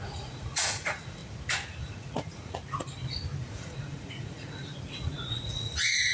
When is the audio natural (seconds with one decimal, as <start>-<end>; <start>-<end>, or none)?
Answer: 1.2-1.9; 2.6-3.4